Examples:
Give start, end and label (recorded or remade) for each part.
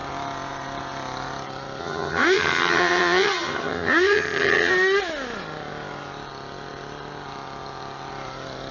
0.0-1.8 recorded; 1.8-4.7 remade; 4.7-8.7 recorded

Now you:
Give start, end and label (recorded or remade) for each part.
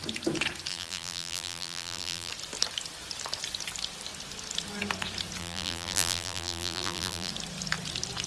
0.0-0.7 recorded; 0.7-2.3 remade; 2.3-5.4 recorded; 5.4-7.3 remade; 7.3-8.3 recorded